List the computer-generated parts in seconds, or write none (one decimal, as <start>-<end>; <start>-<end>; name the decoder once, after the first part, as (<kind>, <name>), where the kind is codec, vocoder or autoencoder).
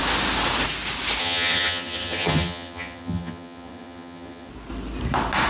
1.2-4.5 (vocoder, HiFi-GAN)